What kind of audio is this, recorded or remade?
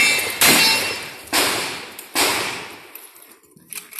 recorded